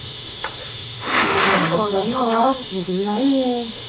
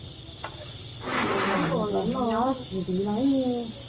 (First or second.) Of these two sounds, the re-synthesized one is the first